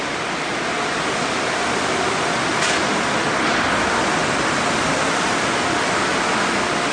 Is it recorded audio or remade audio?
recorded